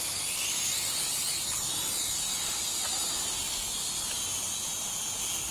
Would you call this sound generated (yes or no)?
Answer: no